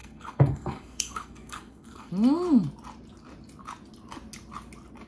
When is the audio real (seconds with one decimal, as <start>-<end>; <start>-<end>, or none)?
2.1-5.1